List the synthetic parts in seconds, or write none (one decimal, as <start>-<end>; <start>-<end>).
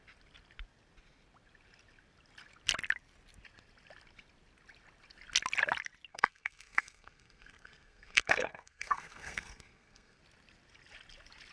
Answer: 6.1-10.2